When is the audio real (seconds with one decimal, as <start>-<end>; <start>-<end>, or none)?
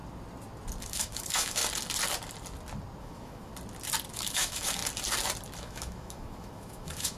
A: 0.0-0.8; 1.6-3.0; 3.5-4.1; 4.8-5.6